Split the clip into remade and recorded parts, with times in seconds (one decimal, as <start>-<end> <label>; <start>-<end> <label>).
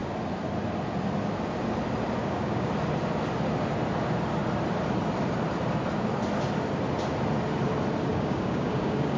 0.0-2.2 recorded; 2.2-2.7 remade; 2.7-8.1 recorded; 8.1-9.2 remade